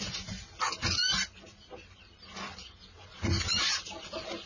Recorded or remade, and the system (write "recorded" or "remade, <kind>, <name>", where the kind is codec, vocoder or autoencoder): recorded